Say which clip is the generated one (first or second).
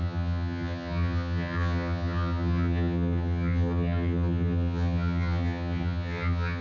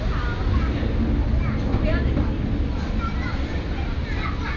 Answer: first